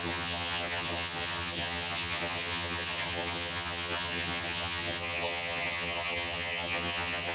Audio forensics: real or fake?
fake